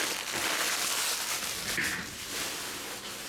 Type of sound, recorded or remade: remade